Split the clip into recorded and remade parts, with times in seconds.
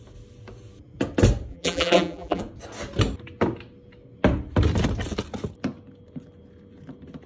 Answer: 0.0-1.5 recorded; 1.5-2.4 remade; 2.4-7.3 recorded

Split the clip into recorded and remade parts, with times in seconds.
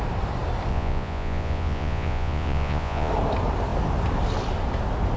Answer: 0.0-0.7 recorded; 0.7-3.1 remade; 3.1-5.2 recorded